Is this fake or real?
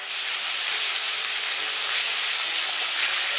fake